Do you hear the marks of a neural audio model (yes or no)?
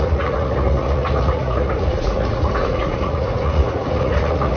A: yes